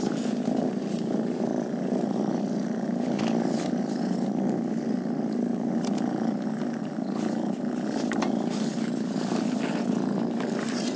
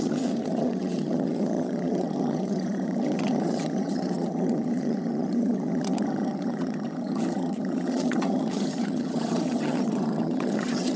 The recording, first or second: first